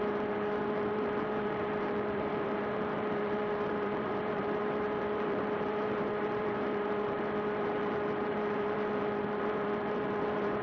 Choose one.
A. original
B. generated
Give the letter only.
B